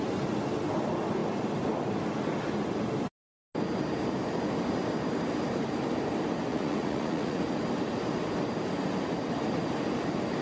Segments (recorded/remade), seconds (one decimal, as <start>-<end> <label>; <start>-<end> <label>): 0.0-6.5 recorded; 6.5-7.4 remade; 7.4-10.4 recorded